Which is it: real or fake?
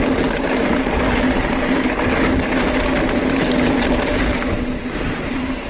real